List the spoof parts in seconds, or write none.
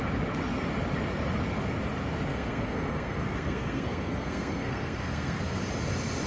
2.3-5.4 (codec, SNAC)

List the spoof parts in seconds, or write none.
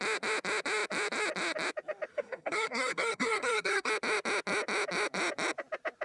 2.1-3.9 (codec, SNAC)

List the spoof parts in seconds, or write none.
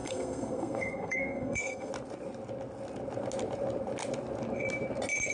0.0-1.9 (codec, SNAC)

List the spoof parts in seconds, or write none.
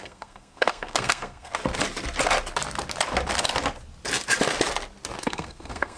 0.0-1.6 (codec, SNAC); 5.2-6.0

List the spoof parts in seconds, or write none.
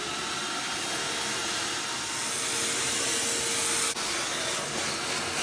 none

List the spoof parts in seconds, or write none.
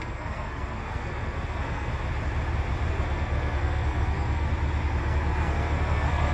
0.0-1.9 (codec, SNAC); 2.9-4.5; 5.0-6.3